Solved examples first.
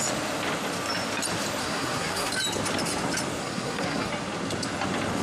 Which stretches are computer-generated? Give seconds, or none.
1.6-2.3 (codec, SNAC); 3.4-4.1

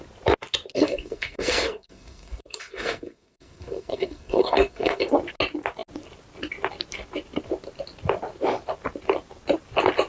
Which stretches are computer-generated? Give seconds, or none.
0.7-5.1 (codec, SNAC)

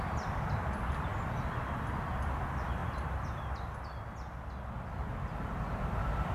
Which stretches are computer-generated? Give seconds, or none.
none

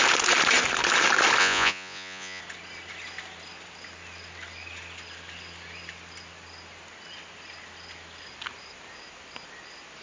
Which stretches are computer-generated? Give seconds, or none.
1.4-2.4 (vocoder, Vocos)

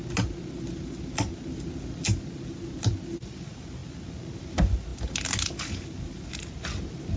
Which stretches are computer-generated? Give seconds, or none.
none

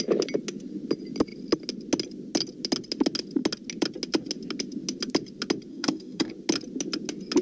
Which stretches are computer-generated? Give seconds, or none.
5.7-6.3 (codec, SNAC)

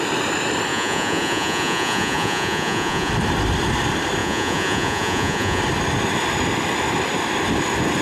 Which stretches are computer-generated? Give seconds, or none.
0.7-3.1 (vocoder, Vocos); 4.2-5.6